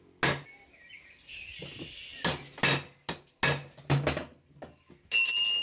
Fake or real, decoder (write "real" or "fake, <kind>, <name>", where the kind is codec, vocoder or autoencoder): real